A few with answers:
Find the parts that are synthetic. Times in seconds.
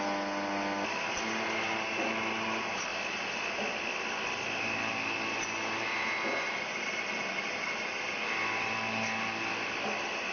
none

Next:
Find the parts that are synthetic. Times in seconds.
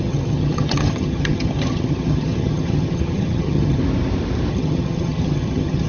0.0-3.8; 4.5-5.9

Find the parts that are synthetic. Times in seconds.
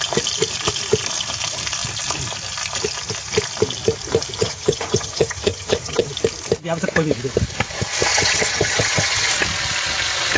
4.4-6.1; 8.1-9.3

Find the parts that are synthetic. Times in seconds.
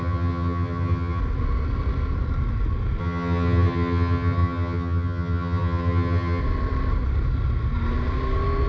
0.0-1.2; 3.0-6.4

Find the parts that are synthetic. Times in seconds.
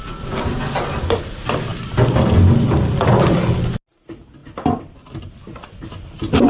none